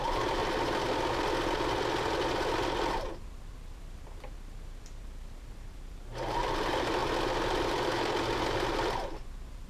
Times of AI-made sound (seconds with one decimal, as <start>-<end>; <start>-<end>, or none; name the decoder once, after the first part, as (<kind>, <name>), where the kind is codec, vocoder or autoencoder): 0.0-0.4 (vocoder, BigVGAN v2); 2.1-7.0; 8.7-9.7